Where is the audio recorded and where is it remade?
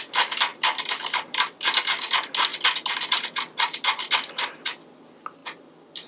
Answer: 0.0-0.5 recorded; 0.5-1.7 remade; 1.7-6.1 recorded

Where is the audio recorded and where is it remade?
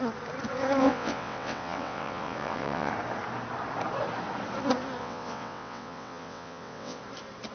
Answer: 0.0-0.8 recorded; 0.8-2.9 remade; 2.9-5.0 recorded; 5.0-7.0 remade; 7.0-7.5 recorded